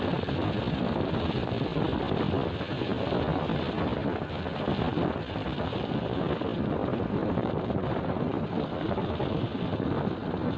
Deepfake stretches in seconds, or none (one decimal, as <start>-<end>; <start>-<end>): 4.9-5.8; 7.4-8.5